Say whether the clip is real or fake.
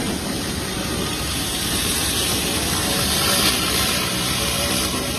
fake